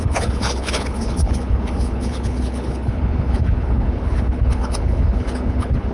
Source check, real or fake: fake